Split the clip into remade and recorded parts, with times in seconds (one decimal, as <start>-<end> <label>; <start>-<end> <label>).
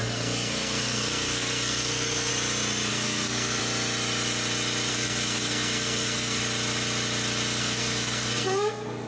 0.0-2.3 remade; 2.3-2.9 recorded; 2.9-3.6 remade; 3.6-4.9 recorded; 4.9-6.4 remade; 6.4-7.6 recorded; 7.6-9.1 remade